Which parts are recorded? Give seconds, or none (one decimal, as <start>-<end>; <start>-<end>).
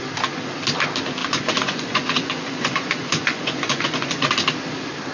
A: 0.0-1.2; 4.3-5.1